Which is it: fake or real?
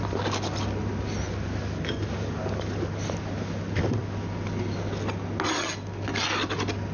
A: real